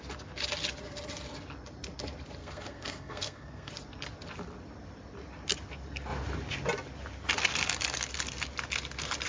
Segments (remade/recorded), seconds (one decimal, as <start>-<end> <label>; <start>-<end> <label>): 0.0-2.4 recorded; 2.4-3.7 remade; 3.7-9.3 recorded